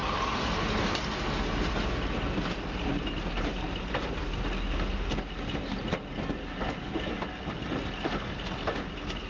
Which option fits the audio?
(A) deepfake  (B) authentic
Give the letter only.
B